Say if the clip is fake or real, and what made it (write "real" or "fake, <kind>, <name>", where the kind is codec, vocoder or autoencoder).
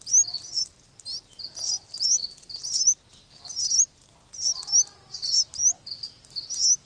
real